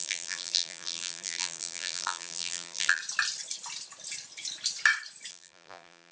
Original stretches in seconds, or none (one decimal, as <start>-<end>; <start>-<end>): 3.0-5.3

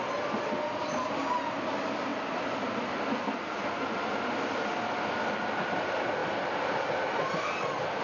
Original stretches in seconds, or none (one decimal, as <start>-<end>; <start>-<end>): 0.0-8.0

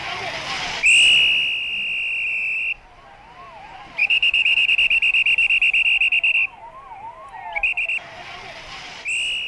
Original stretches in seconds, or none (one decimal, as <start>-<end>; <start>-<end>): 0.0-4.0; 4.7-9.5

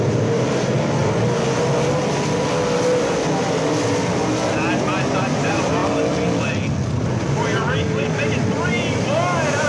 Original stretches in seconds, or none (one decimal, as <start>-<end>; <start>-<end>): 0.0-9.7

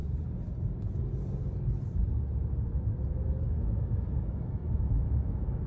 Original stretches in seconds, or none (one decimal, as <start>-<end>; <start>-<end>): 0.0-3.4

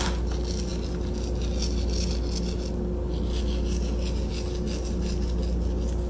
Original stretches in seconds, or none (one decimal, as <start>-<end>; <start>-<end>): 0.0-6.1

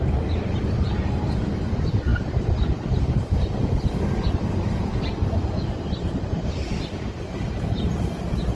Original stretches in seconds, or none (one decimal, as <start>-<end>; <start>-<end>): 0.0-8.5

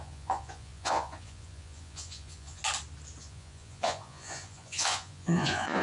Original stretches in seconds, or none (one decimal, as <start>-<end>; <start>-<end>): 2.6-3.2